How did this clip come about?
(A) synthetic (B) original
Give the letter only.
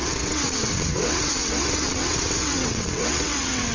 A